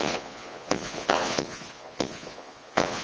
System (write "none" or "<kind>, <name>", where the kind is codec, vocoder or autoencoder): vocoder, Vocos